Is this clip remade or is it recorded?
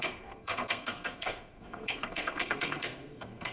remade